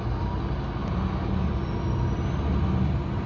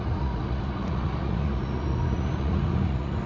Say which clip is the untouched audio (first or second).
first